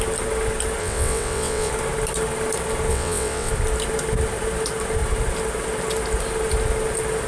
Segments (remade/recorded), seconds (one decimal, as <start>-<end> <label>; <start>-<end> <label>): 0.0-0.8 recorded; 0.8-1.7 remade; 1.7-2.9 recorded; 2.9-3.5 remade; 3.5-7.3 recorded

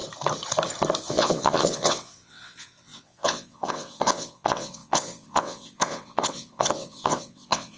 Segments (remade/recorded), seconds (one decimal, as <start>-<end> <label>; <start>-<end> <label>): 0.0-1.0 recorded; 1.0-7.8 remade

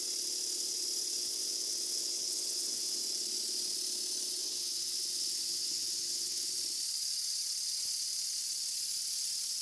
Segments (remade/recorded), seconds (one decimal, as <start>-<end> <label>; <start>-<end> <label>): 0.0-1.2 recorded; 1.2-3.0 remade; 3.0-4.4 recorded; 4.4-6.5 remade; 6.5-9.6 recorded

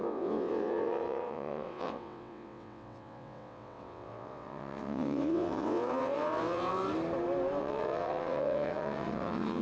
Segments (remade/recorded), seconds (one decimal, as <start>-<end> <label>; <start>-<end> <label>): 0.0-6.8 remade; 6.8-7.6 recorded; 7.6-9.6 remade